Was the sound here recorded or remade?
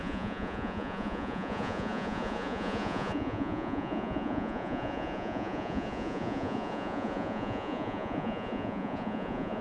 remade